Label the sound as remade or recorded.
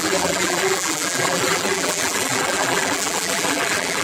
remade